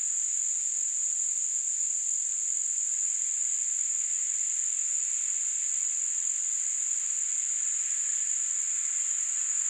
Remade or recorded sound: recorded